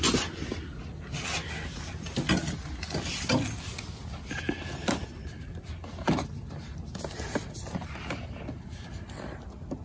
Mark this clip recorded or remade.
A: recorded